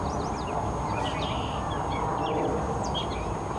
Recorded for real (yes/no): yes